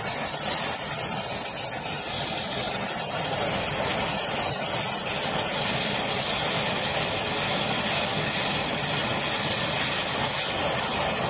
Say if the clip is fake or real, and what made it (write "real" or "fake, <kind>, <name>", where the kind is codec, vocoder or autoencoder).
real